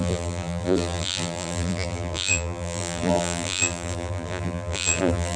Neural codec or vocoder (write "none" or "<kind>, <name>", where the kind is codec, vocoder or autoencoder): vocoder, BigVGAN v2